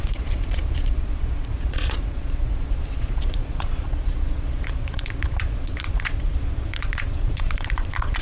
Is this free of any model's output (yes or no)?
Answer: no